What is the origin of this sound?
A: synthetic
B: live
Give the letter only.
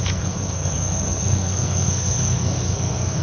A